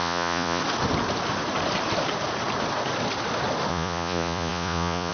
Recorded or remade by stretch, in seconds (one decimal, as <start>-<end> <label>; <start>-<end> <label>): 0.0-0.6 remade; 0.6-3.7 recorded; 3.7-5.1 remade